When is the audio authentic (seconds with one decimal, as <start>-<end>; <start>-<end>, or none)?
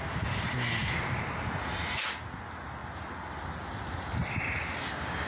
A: 0.0-0.8; 1.6-5.3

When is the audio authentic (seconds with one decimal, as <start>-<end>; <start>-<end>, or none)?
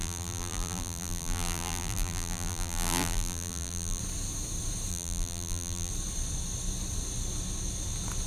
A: 4.0-4.9; 5.9-8.3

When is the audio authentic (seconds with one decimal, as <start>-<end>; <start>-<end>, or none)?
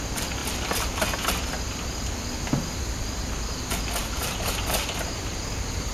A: 0.0-4.0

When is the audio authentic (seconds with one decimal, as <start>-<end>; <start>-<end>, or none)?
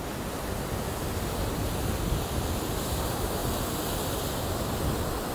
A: 0.0-5.3